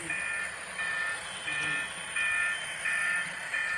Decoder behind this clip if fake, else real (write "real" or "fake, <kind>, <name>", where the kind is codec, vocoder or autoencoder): real